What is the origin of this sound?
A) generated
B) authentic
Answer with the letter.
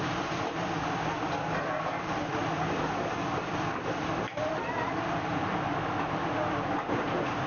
A